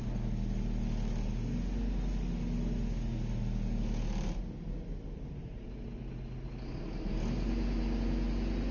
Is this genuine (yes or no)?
yes